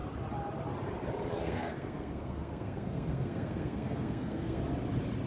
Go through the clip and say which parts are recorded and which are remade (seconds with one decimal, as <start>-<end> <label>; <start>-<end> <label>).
0.0-1.4 recorded; 1.4-4.6 remade; 4.6-5.3 recorded

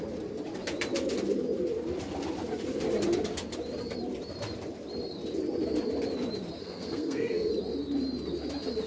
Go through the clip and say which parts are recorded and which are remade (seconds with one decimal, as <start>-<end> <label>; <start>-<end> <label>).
0.0-6.6 recorded; 6.6-7.5 remade; 7.5-8.9 recorded

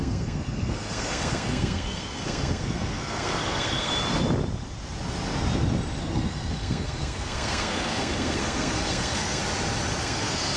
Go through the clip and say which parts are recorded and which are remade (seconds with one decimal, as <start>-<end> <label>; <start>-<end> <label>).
0.0-3.9 remade; 3.9-6.0 recorded; 6.0-9.4 remade; 9.4-10.0 recorded; 10.0-10.6 remade

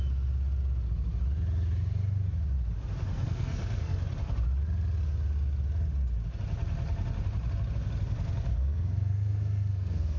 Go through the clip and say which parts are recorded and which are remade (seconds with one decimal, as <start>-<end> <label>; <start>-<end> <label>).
0.0-3.1 recorded; 3.1-4.0 remade; 4.0-8.5 recorded; 8.5-10.2 remade